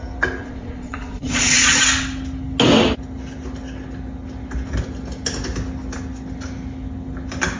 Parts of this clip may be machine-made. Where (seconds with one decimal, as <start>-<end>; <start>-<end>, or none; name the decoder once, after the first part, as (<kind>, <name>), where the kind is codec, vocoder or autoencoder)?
0.4-1.8 (vocoder, Vocos)